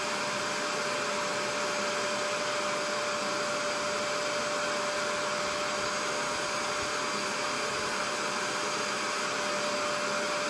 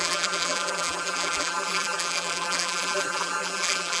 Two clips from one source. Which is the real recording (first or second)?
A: first